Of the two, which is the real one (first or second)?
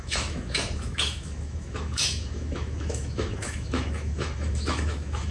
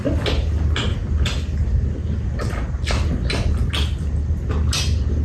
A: second